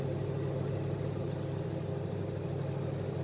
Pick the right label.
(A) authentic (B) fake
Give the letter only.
A